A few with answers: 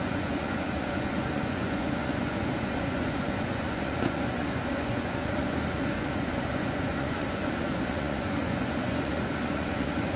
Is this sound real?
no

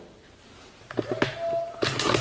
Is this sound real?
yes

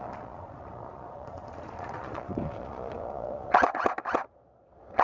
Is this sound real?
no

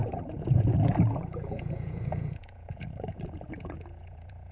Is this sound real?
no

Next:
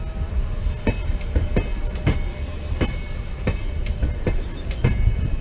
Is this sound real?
yes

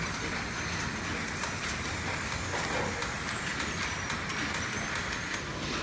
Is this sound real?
yes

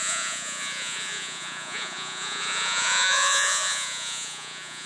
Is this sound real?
no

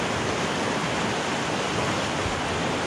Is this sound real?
yes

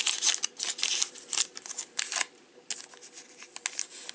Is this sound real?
yes